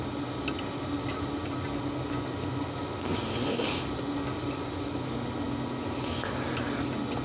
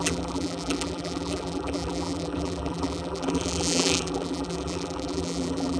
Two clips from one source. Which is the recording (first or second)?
first